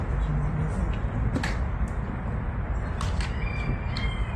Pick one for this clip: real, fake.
real